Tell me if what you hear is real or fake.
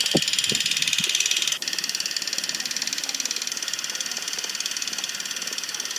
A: real